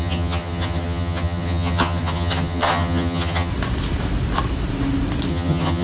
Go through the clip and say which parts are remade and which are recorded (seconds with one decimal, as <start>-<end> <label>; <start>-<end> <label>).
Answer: 0.0-3.5 remade; 3.5-5.3 recorded; 5.3-5.8 remade